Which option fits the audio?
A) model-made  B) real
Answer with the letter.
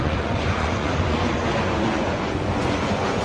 A